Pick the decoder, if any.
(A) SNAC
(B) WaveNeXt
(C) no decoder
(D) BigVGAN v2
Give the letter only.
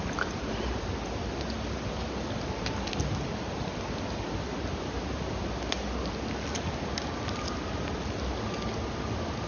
C